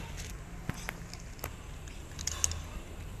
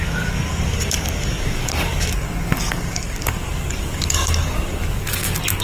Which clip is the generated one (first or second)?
second